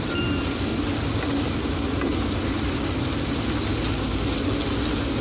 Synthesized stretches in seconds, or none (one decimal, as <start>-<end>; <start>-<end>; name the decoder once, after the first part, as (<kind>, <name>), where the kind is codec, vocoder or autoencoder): 0.0-0.7 (vocoder, BigVGAN v2); 1.3-2.1